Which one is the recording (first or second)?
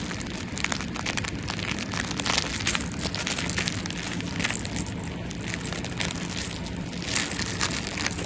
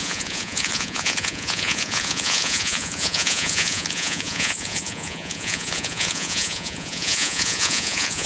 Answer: first